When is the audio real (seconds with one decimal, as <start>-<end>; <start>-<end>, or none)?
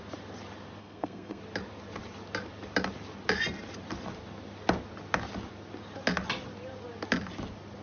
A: 0.0-0.8; 1.4-7.8